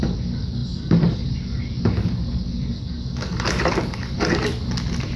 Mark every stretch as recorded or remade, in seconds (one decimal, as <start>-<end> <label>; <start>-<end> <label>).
0.0-4.5 remade; 4.5-5.2 recorded